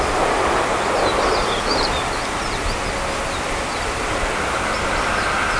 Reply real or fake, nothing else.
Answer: real